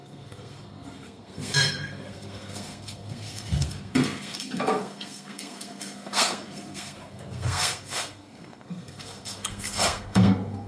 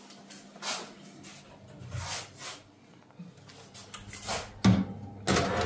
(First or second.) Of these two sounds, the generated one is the first